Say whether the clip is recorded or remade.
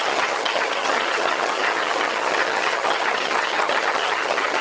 remade